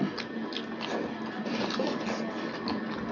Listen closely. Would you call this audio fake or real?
real